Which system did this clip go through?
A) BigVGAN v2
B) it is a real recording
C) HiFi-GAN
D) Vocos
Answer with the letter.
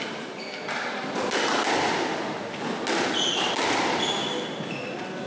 B